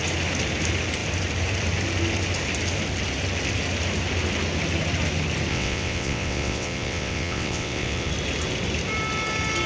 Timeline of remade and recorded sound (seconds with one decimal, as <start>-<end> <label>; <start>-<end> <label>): 0.0-5.5 recorded; 5.5-8.1 remade; 8.1-9.7 recorded

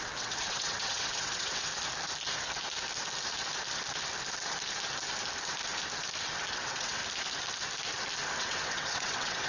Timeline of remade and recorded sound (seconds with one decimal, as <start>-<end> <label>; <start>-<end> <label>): 0.0-1.7 remade; 1.7-6.5 recorded; 6.5-7.0 remade; 7.0-8.4 recorded; 8.4-9.5 remade

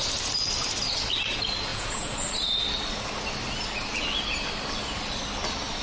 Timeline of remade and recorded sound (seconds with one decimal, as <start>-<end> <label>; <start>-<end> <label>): 0.0-1.7 recorded; 1.7-2.3 remade; 2.3-5.8 recorded